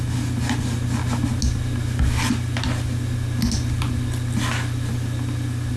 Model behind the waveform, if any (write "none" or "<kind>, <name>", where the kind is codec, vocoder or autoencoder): none